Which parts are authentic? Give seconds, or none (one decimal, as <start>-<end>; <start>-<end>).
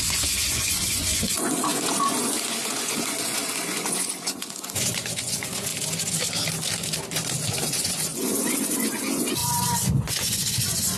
5.7-7.6